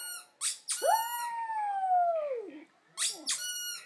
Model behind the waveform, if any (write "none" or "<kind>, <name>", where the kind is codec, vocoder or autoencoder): none